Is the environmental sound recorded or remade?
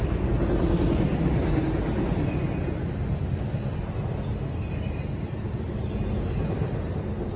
recorded